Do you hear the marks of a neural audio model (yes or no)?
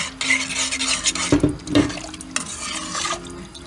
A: no